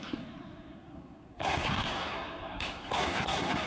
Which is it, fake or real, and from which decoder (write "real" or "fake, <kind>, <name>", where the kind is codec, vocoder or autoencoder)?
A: fake, codec, SNAC